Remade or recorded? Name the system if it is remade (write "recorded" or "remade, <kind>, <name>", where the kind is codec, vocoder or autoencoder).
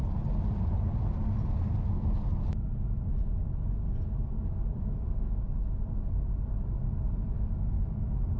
recorded